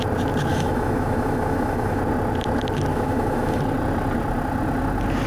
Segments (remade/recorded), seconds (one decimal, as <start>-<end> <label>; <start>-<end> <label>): 0.0-0.5 recorded; 0.5-2.0 remade; 2.0-2.9 recorded; 2.9-3.6 remade; 3.6-5.3 recorded